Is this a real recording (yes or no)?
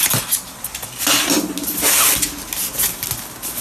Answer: yes